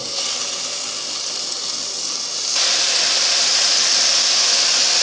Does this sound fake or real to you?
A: real